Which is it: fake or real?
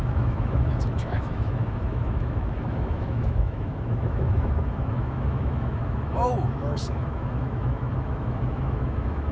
fake